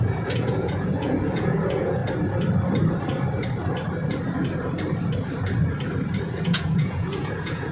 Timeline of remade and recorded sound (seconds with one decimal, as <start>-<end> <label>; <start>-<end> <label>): 0.0-2.0 remade; 2.0-6.2 recorded; 6.2-7.7 remade